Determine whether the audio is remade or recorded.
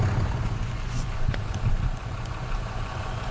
remade